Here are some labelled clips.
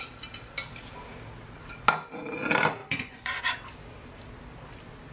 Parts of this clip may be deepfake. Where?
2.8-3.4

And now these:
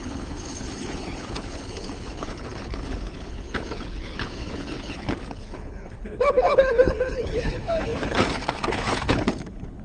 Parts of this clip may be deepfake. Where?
0.0-9.8